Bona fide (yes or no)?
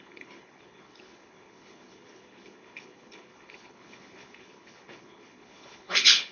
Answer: no